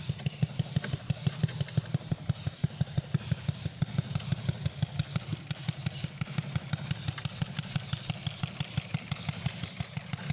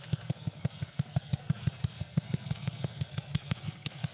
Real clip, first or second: first